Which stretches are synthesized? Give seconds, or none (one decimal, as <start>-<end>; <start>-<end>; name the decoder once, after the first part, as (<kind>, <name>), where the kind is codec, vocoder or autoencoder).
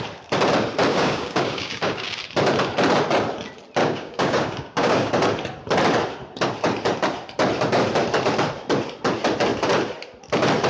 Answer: 0.9-2.2 (codec, DAC); 3.8-5.1